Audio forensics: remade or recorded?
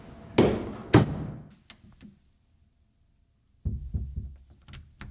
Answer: recorded